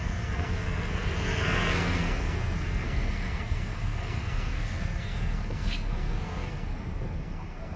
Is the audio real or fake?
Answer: fake